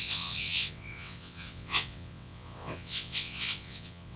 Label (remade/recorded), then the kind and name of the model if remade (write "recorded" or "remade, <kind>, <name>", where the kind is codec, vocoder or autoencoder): remade, vocoder, WaveNeXt